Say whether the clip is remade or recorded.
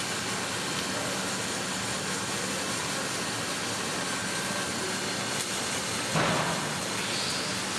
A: recorded